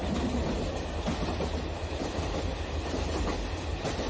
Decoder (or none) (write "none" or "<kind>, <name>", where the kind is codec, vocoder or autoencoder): none